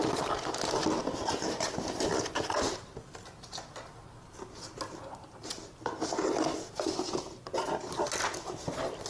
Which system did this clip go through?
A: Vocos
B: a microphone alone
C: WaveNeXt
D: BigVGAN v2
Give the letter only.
B